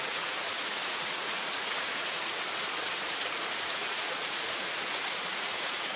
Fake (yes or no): yes